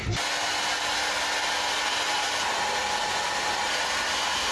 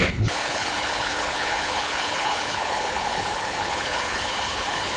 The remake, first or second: second